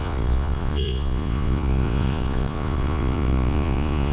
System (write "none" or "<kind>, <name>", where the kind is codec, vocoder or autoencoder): vocoder, Vocos